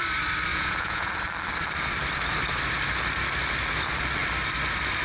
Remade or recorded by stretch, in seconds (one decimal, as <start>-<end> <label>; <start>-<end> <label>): 0.0-0.5 recorded; 0.5-1.1 remade; 1.1-5.0 recorded

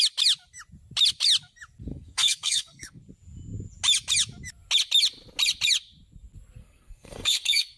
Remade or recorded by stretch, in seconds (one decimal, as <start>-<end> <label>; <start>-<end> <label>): 0.0-1.9 recorded; 1.9-3.0 remade; 3.0-6.6 recorded; 6.6-7.8 remade

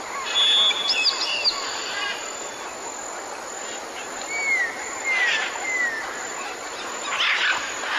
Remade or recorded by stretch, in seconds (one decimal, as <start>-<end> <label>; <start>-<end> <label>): 0.0-8.0 recorded

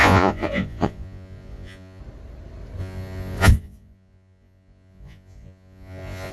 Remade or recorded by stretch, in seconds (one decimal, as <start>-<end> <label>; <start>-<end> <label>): 0.0-2.0 remade; 2.0-2.8 recorded; 2.8-6.3 remade

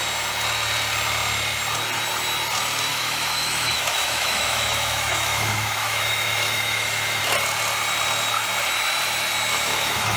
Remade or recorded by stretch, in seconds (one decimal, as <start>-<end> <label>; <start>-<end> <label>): 0.0-2.9 recorded; 2.9-7.2 remade; 7.2-9.5 recorded; 9.5-10.2 remade

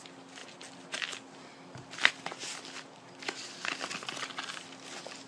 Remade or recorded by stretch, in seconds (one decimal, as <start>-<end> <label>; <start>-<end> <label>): 0.0-5.3 recorded

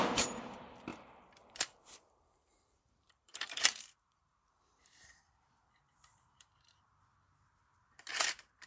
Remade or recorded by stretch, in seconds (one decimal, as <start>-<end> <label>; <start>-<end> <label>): 0.0-7.1 remade; 7.1-8.1 recorded; 8.1-8.7 remade

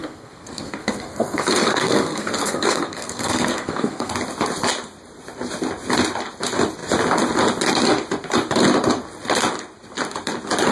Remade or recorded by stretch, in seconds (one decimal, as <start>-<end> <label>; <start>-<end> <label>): 0.0-4.1 remade; 4.1-10.7 recorded